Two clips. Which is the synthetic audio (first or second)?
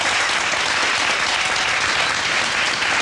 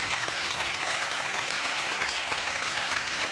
second